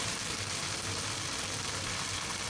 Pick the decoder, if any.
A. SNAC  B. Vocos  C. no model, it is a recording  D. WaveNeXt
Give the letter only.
C